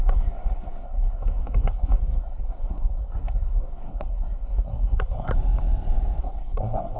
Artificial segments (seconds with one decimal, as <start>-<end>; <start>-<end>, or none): 0.0-5.3; 6.2-7.0